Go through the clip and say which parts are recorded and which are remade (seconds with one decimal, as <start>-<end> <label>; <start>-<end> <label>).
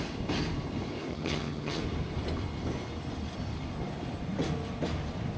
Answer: 0.0-1.1 recorded; 1.1-1.8 remade; 1.8-5.4 recorded